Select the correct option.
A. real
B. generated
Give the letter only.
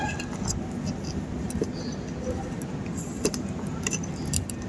A